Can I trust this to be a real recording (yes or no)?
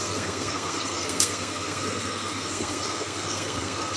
no